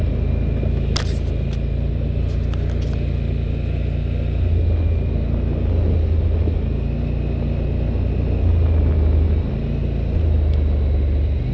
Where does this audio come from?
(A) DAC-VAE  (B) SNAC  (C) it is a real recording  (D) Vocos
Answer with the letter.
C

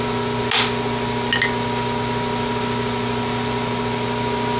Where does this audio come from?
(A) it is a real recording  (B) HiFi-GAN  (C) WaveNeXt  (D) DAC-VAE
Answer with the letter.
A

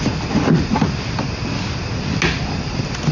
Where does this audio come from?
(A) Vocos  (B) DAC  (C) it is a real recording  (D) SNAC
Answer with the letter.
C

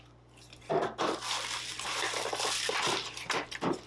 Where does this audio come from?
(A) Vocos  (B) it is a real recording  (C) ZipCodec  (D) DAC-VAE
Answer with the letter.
B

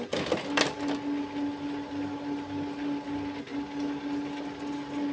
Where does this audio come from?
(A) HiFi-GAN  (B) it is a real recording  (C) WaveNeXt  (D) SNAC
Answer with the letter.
B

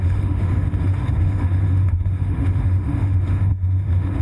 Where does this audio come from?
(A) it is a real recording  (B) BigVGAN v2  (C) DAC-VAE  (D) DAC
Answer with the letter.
C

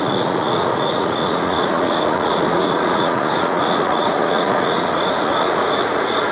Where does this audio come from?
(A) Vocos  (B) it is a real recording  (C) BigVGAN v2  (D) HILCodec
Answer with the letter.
A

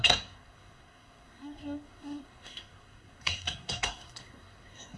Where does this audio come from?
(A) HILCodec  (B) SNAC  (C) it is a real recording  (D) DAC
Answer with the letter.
B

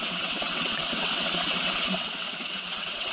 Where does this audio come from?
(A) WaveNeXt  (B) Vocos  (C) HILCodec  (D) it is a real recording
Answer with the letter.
A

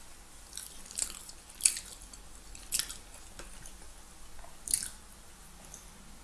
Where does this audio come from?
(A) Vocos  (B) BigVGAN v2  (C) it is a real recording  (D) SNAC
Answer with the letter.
C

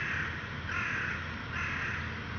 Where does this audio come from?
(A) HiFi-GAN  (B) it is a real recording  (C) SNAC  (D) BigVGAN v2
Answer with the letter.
B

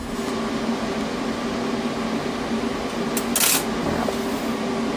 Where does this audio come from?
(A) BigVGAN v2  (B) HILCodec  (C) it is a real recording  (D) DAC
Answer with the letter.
C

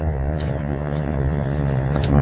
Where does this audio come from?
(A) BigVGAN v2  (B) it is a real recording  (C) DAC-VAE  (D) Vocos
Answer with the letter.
D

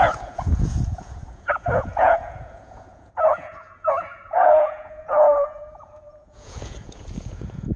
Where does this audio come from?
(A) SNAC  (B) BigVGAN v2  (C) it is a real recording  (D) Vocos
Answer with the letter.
D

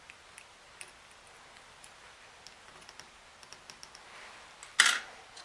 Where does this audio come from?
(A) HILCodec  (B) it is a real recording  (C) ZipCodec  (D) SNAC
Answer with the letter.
B